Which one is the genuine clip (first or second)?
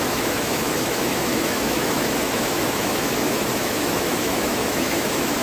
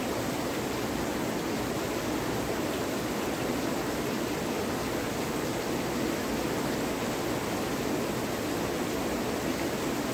second